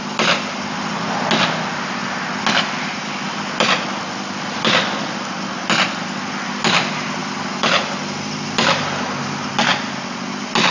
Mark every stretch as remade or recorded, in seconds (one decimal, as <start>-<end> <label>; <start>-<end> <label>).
0.0-7.2 recorded; 7.2-9.5 remade; 9.5-10.7 recorded